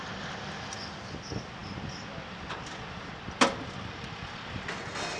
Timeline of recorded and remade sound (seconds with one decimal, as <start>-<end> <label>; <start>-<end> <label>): 0.0-5.2 recorded